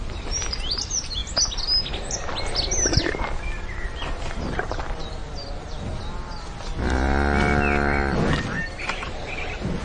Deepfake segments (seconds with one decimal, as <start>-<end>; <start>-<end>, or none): 0.0-1.2; 3.9-5.2; 8.4-9.8